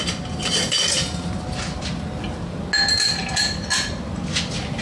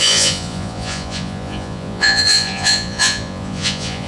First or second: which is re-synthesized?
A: second